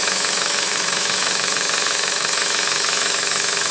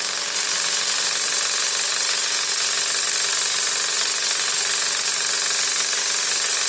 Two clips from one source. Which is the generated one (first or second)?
first